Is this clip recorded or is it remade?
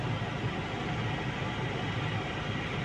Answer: recorded